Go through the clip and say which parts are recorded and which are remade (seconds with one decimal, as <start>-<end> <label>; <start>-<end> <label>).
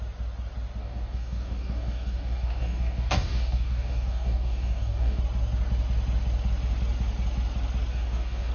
0.0-0.8 recorded; 0.8-5.2 remade; 5.2-7.9 recorded; 7.9-8.5 remade